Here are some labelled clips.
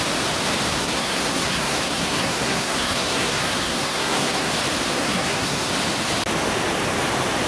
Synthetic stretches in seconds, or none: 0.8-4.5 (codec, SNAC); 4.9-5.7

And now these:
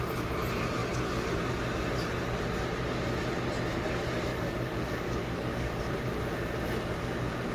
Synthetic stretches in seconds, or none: 4.3-5.8 (codec, DAC)